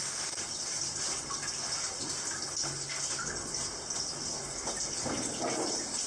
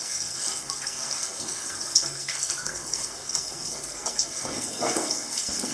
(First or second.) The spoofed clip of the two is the second